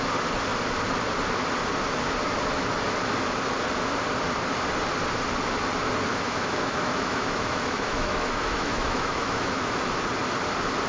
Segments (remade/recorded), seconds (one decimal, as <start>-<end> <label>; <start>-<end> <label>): 0.0-6.1 recorded; 6.1-9.8 remade; 9.8-10.9 recorded